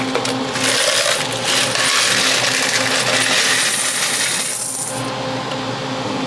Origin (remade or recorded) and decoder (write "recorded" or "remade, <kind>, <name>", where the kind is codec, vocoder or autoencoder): recorded